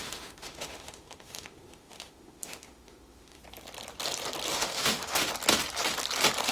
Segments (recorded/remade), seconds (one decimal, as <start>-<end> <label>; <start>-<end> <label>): 0.0-3.4 remade; 3.4-4.5 recorded; 4.5-5.3 remade; 5.3-6.5 recorded